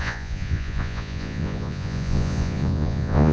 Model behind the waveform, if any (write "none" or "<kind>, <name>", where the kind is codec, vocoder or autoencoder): vocoder, Vocos